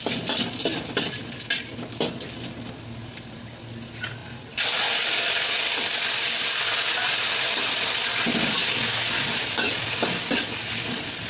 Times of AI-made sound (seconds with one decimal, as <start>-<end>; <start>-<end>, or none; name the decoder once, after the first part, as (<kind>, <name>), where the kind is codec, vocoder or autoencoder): none